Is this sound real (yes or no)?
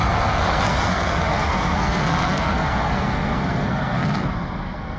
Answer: no